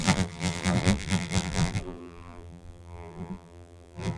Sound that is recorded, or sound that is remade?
remade